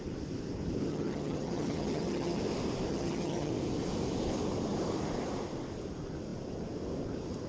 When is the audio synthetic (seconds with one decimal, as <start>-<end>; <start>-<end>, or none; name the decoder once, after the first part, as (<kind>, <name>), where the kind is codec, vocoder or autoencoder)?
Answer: 0.9-2.4 (vocoder, HiFi-GAN); 2.9-3.5